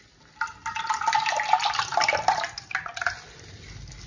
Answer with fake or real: real